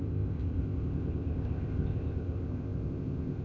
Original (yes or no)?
no